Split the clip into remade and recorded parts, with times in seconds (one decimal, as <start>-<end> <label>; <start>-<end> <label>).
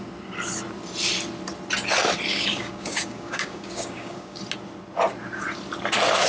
0.0-2.3 recorded; 2.3-4.4 remade; 4.4-6.3 recorded